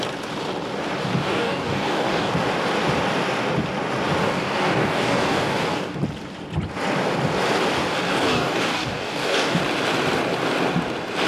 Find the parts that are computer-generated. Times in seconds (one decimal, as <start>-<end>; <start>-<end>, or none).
1.1-2.3; 4.2-6.0; 8.1-9.6